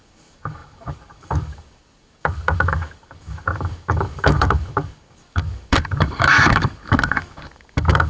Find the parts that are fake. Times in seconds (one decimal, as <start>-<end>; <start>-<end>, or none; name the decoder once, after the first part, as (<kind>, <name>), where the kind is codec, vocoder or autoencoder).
0.0-8.1 (codec, DAC)